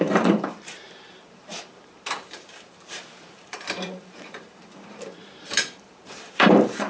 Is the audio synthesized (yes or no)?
yes